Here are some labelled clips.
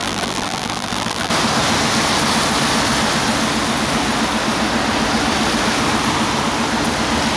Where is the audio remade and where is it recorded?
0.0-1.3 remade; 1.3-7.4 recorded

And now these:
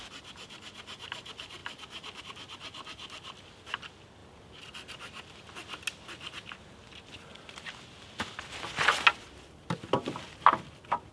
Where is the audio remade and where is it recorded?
0.0-11.1 recorded

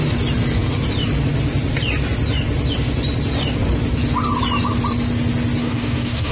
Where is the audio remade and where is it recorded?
0.0-5.6 recorded; 5.6-6.3 remade